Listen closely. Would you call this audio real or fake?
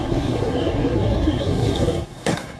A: fake